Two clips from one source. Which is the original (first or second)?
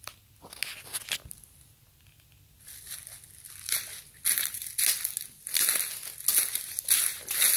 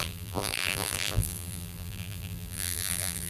first